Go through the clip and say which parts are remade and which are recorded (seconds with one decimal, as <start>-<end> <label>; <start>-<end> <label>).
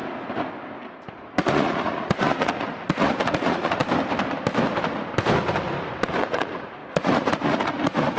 0.0-1.1 recorded; 1.1-3.8 remade; 3.8-6.2 recorded; 6.2-8.2 remade